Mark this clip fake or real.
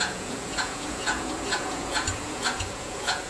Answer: fake